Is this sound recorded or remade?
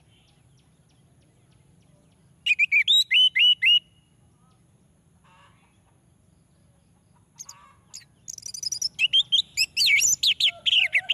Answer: recorded